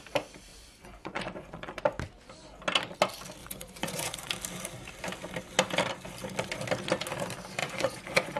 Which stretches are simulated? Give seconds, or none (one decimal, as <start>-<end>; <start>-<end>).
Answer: 0.5-1.8; 3.4-4.3; 7.6-8.4